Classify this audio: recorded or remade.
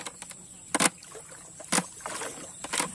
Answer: recorded